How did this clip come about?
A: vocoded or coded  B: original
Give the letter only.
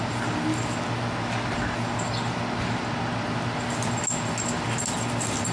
B